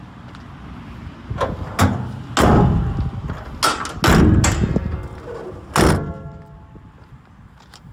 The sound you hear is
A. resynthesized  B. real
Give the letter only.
B